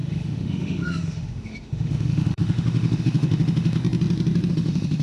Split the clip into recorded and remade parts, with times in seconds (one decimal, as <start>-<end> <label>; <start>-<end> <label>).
0.0-3.8 remade; 3.8-4.5 recorded; 4.5-5.0 remade